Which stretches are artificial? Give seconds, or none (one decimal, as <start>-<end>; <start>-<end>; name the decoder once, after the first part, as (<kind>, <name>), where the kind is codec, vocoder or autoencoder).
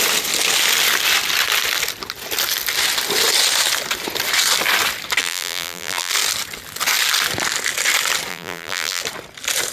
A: 5.2-6.1 (vocoder, BigVGAN v2); 8.3-9.0